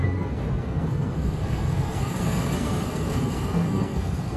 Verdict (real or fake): fake